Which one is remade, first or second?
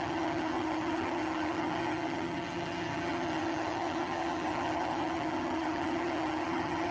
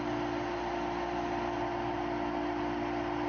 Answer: first